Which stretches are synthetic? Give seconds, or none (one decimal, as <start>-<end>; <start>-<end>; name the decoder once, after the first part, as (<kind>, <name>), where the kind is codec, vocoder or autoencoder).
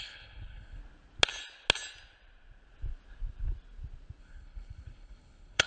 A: 0.0-0.8 (codec, HILCodec); 4.2-5.7